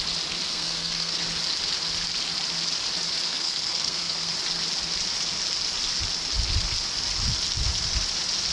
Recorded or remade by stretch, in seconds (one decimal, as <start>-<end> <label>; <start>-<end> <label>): 0.0-0.5 recorded; 0.5-1.2 remade; 1.2-3.3 recorded; 3.3-4.3 remade; 4.3-8.5 recorded